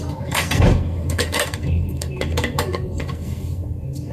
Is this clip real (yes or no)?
no